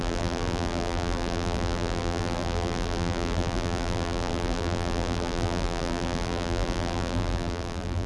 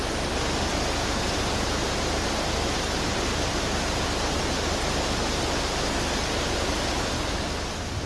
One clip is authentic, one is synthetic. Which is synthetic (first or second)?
first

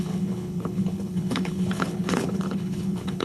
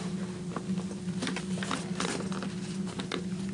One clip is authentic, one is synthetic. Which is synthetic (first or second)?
first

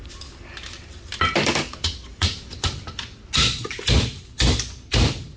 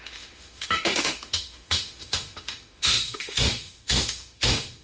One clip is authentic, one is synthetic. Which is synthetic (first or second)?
second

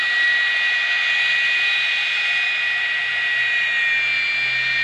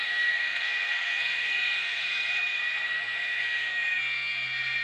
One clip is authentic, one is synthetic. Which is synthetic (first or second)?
second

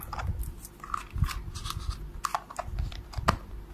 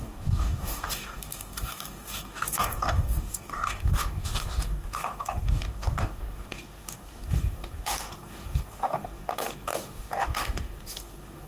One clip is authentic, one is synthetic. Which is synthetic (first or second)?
second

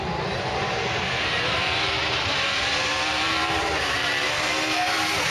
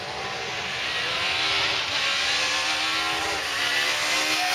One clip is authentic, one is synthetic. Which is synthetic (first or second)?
first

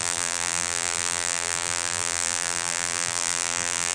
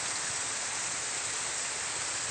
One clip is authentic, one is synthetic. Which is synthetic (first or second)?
first